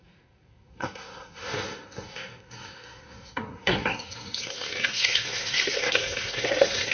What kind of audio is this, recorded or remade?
remade